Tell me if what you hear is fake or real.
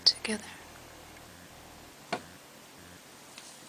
real